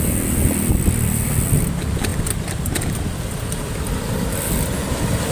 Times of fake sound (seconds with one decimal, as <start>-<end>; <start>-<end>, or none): 0.0-2.1; 3.2-5.3